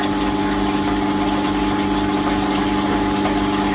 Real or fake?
real